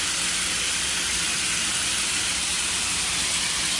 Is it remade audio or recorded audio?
recorded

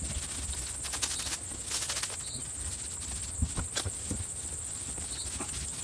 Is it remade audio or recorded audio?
recorded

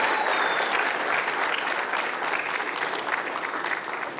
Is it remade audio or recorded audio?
recorded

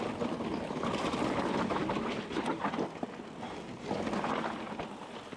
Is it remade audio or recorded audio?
recorded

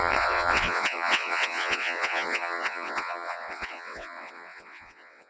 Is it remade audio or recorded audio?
remade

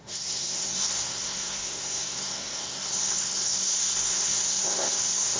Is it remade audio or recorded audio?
remade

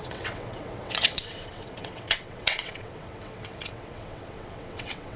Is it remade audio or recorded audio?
remade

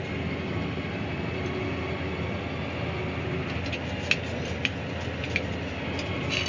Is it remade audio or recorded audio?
recorded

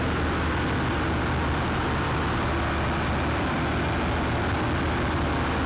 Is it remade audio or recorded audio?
recorded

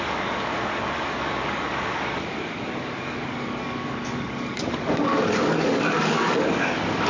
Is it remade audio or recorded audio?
remade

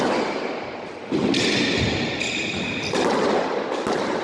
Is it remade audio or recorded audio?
recorded